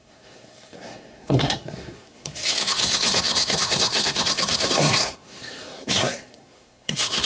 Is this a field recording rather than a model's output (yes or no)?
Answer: no